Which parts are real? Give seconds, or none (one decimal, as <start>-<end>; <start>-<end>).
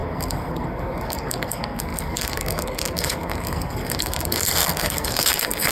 none